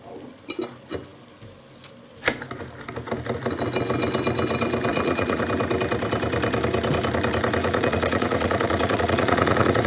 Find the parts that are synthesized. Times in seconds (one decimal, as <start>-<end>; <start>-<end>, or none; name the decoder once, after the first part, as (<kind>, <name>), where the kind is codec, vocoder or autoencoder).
4.9-5.4 (vocoder, Vocos); 7.6-9.9